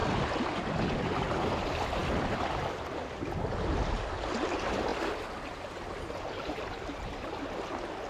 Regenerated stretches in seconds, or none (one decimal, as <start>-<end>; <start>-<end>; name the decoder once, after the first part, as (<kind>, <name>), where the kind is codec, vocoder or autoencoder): none